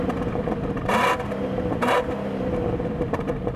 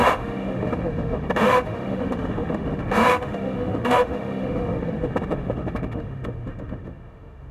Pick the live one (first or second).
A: first